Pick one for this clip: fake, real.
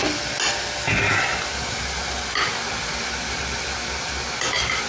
real